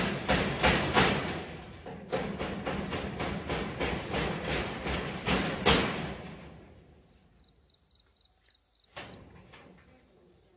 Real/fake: real